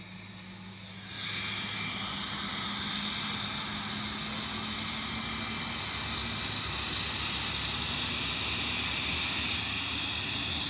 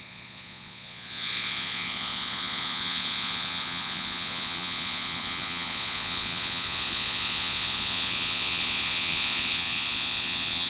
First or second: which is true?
first